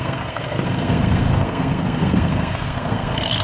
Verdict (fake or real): fake